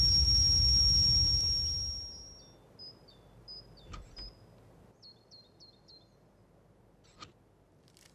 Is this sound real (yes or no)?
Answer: yes